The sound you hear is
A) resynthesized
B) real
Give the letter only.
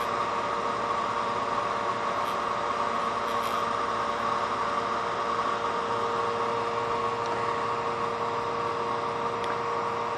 B